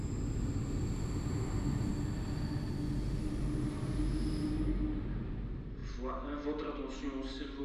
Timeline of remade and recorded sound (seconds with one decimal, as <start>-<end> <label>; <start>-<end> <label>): 0.0-7.6 recorded

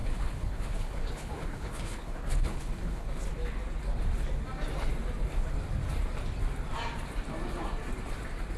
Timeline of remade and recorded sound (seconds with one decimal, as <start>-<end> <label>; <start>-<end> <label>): 0.0-3.2 remade; 3.2-8.6 recorded

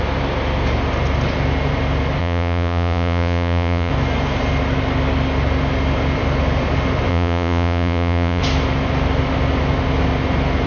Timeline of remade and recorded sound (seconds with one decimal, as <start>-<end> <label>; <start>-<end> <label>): 0.0-2.2 recorded; 2.2-3.9 remade; 3.9-7.1 recorded; 7.1-8.4 remade; 8.4-10.7 recorded